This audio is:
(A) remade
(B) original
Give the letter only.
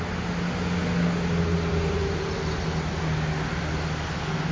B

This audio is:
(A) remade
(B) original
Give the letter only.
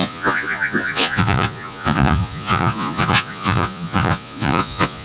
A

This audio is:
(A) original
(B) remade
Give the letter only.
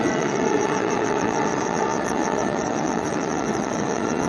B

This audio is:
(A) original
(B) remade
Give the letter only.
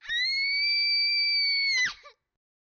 A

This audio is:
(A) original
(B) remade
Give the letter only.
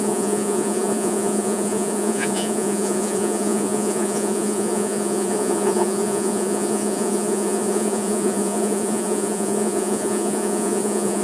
B